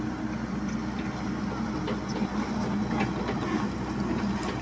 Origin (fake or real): real